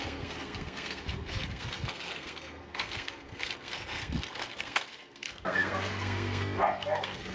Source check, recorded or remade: remade